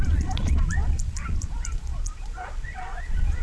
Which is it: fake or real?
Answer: fake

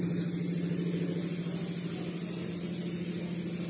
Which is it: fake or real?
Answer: real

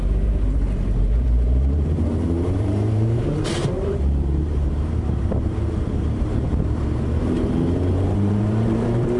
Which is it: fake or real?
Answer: fake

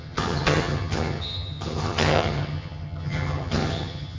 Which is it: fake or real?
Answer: fake